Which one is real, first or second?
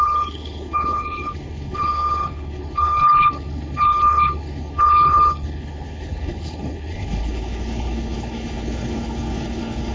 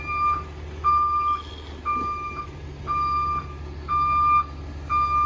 second